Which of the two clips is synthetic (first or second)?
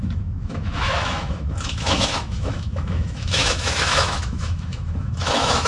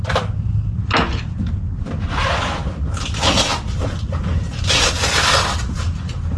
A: first